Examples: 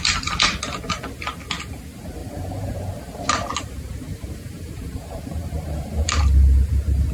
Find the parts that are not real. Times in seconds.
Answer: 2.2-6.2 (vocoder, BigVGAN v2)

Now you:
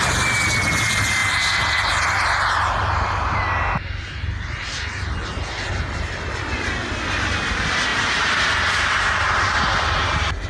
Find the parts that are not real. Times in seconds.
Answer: 7.9-10.5 (vocoder, BigVGAN v2)

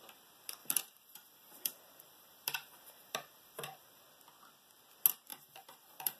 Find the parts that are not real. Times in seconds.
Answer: 0.6-4.0 (vocoder, BigVGAN v2); 5.3-6.2

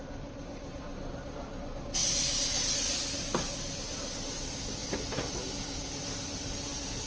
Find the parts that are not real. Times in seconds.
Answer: 4.8-5.4 (vocoder, BigVGAN v2)

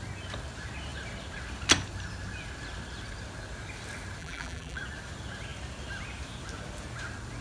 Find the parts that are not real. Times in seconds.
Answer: 4.2-4.8 (vocoder, BigVGAN v2)